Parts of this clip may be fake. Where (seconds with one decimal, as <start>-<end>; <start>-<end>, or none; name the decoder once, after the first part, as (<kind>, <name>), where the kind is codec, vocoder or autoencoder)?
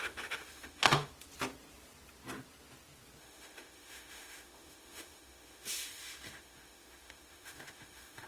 0.0-1.1 (autoencoder, DAC-VAE); 3.2-8.3